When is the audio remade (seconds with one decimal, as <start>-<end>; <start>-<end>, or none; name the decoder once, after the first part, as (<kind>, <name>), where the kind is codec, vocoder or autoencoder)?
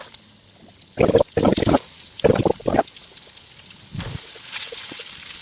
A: 4.3-5.0 (vocoder, WaveNeXt)